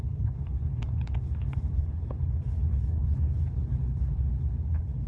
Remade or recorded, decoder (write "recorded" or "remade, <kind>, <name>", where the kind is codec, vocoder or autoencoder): remade, codec, HILCodec